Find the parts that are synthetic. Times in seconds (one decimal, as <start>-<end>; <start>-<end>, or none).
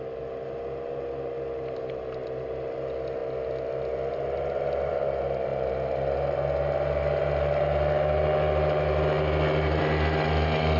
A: none